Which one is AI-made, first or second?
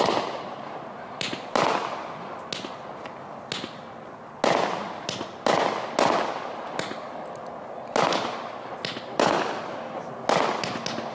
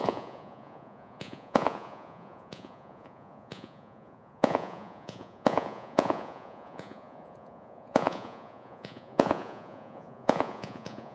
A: second